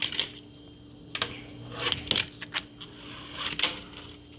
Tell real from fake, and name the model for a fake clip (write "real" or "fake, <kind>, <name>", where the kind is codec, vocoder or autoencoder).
real